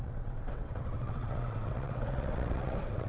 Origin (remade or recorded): remade